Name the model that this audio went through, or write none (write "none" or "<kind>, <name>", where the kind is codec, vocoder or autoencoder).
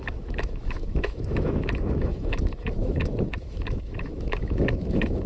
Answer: autoencoder, DAC-VAE